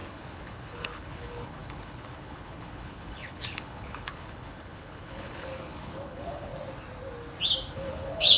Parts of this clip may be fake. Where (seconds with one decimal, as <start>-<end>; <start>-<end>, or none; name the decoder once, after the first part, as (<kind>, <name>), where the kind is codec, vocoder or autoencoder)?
0.0-6.5 (codec, HILCodec); 7.7-8.4